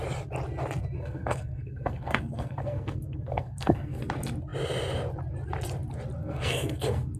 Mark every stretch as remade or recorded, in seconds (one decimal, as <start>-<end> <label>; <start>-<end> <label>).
0.0-1.0 recorded; 1.0-4.0 remade; 4.0-6.2 recorded; 6.2-7.2 remade